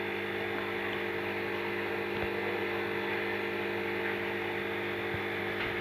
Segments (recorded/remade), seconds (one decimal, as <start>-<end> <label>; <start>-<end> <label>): 0.0-2.6 recorded; 2.6-5.2 remade; 5.2-5.8 recorded